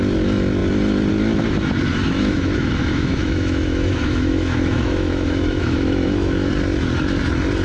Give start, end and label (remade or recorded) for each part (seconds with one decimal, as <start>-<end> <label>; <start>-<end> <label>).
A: 0.0-1.9 recorded; 1.9-6.5 remade; 6.5-7.6 recorded